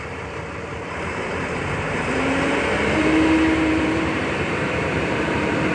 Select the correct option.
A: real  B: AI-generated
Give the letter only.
B